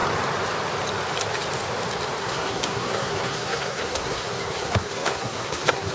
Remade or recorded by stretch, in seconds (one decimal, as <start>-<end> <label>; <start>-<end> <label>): 0.0-2.2 recorded; 2.2-5.9 remade